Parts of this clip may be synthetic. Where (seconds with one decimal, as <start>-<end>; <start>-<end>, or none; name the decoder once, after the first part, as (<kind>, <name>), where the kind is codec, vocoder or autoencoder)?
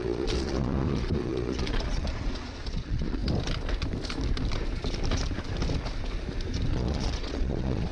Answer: 0.0-3.2 (vocoder, Vocos); 6.7-7.9